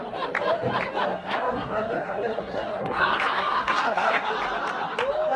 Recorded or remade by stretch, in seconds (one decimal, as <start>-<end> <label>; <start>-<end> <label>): 0.0-1.1 recorded; 1.1-4.3 remade; 4.3-5.4 recorded